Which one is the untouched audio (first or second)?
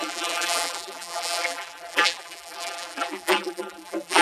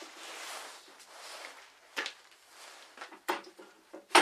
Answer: second